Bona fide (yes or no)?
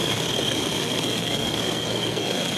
no